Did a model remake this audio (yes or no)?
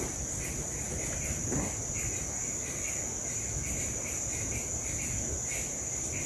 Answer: no